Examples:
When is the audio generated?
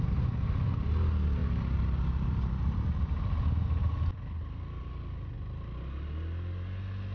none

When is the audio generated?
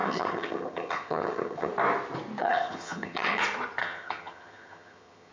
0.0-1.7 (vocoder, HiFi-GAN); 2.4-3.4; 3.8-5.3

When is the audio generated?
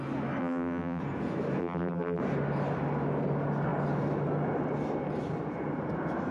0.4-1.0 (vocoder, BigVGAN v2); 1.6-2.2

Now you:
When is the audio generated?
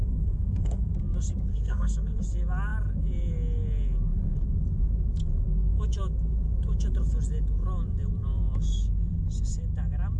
0.0-0.9 (codec, SNAC); 1.5-2.2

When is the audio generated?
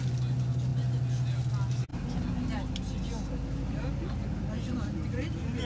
none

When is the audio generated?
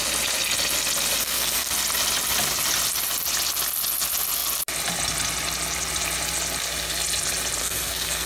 1.2-1.7 (codec, SNAC); 7.6-8.3